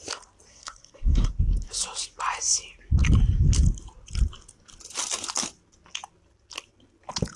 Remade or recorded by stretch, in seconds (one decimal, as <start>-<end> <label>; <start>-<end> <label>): 0.0-0.5 recorded; 0.5-1.3 remade; 1.3-7.4 recorded